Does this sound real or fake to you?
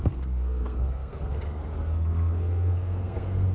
fake